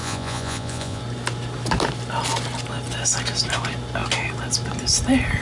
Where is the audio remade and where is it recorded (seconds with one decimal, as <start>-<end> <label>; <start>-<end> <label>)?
0.0-1.0 remade; 1.0-5.4 recorded